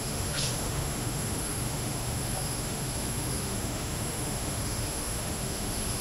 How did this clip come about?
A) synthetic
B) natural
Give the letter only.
A